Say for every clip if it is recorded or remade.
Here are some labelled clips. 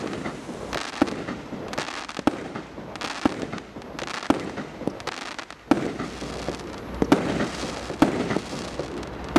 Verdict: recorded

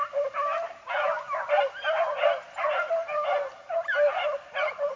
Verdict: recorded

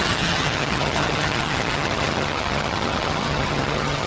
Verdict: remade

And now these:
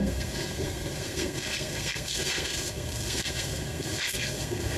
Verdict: remade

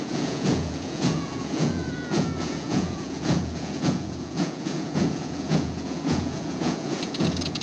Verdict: remade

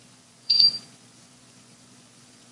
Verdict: remade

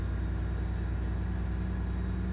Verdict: recorded